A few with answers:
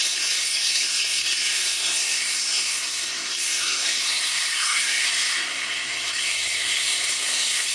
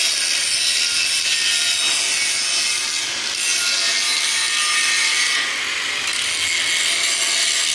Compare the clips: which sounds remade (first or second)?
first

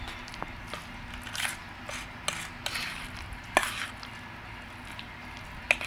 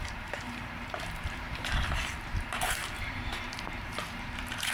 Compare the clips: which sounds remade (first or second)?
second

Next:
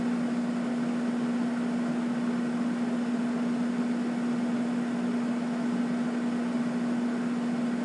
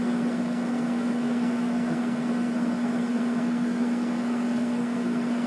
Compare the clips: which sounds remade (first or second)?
second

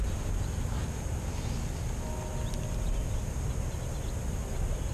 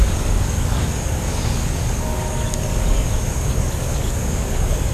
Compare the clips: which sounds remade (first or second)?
second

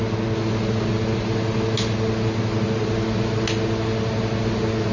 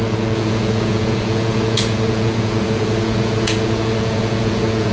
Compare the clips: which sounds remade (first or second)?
second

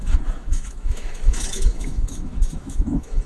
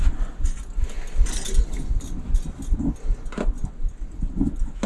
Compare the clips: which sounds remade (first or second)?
first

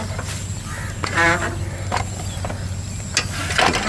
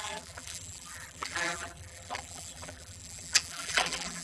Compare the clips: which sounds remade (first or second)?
second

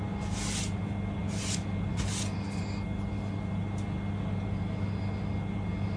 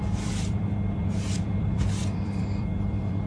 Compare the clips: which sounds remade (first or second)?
second